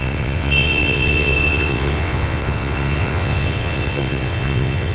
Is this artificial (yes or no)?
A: yes